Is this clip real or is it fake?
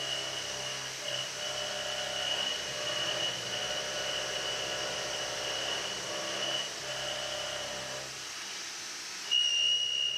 real